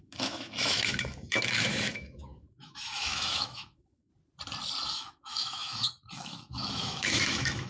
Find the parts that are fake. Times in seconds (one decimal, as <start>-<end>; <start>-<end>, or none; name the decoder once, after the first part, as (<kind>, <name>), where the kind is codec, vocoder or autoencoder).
0.0-4.1 (autoencoder, DAC-VAE); 4.9-7.7

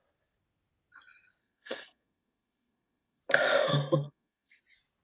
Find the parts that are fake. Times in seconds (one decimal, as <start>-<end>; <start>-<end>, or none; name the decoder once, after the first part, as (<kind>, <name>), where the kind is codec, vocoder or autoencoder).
1.4-3.2 (codec, SNAC); 3.7-4.6

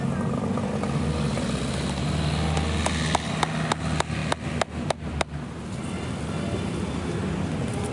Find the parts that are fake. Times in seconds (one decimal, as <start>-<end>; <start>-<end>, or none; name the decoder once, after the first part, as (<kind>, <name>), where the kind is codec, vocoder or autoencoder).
none

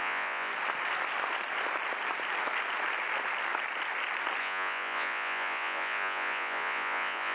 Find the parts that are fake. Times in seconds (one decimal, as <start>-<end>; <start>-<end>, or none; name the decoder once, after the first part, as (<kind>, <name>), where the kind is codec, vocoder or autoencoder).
0.0-0.5 (vocoder, Vocos); 4.4-7.3

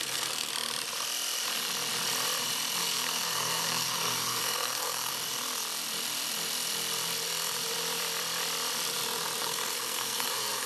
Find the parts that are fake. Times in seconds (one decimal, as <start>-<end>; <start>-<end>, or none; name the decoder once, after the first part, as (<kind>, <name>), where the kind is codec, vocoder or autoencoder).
0.0-0.5 (codec, SNAC); 2.8-5.1; 9.4-10.7

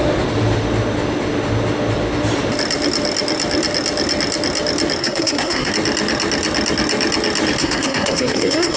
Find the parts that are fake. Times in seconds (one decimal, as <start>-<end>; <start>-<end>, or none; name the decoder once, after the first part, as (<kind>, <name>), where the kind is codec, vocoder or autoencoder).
5.0-5.7 (codec, SNAC); 7.6-8.8

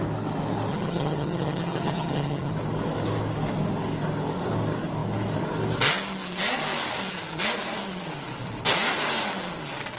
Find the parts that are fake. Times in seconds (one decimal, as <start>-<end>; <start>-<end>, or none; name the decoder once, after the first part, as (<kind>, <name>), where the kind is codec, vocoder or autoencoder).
0.7-2.5 (vocoder, HiFi-GAN)

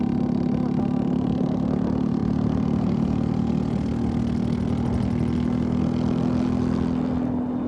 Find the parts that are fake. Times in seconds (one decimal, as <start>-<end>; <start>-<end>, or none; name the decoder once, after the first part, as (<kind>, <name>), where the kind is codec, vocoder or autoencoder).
none